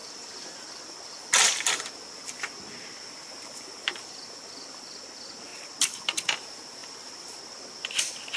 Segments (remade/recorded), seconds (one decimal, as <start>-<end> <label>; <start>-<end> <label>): 0.0-1.8 remade; 1.8-6.8 recorded; 6.8-7.3 remade; 7.3-8.4 recorded